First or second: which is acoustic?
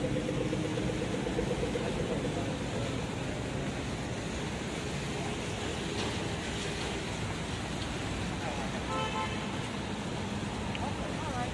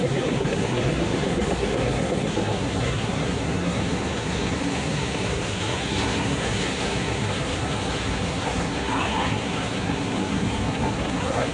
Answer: first